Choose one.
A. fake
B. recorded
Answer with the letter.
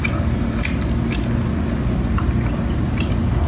B